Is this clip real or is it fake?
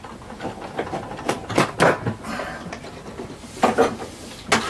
real